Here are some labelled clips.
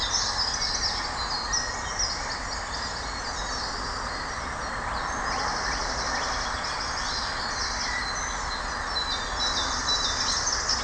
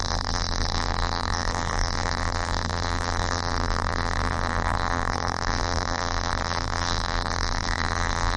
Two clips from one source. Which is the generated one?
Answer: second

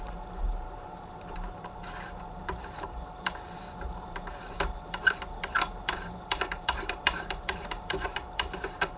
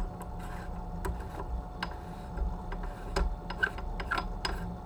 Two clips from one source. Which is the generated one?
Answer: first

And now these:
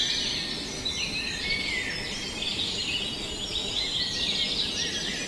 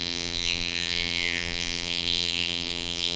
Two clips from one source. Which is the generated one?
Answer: second